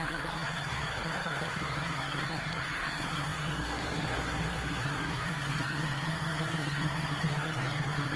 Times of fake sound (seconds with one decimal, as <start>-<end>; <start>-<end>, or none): 0.0-8.2